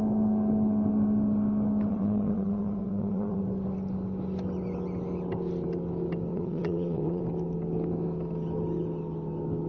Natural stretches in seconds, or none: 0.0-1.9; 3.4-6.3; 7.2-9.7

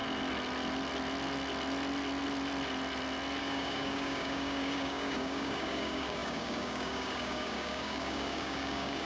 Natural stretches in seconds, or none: 0.0-3.4